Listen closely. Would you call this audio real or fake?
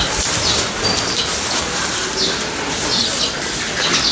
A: real